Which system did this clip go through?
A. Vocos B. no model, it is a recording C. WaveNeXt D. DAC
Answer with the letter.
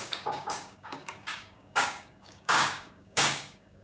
D